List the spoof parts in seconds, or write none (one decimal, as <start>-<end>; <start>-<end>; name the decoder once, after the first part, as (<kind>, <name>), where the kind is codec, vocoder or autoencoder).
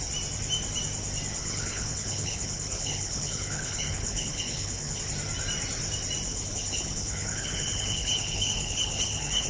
1.4-5.0 (codec, HILCodec); 6.3-9.5